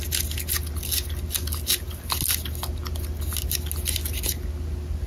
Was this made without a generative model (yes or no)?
yes